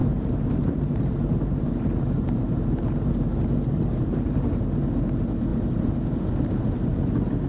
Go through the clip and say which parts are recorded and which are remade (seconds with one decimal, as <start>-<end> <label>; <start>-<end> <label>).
0.0-4.5 remade; 4.5-5.5 recorded; 5.5-7.1 remade; 7.1-7.5 recorded